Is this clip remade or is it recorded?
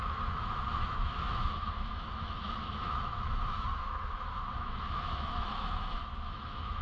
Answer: remade